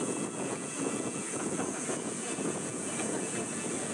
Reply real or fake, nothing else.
fake